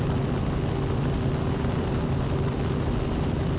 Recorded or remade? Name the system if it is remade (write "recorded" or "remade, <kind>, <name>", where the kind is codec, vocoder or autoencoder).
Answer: recorded